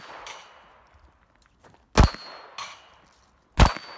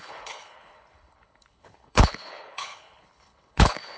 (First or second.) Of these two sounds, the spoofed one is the second